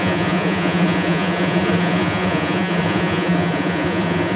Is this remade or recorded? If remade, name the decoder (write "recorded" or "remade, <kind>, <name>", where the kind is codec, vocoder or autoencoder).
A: remade, vocoder, Vocos